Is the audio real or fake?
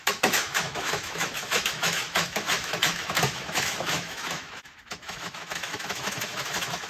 fake